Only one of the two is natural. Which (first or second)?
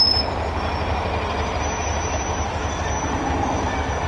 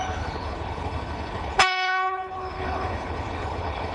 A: first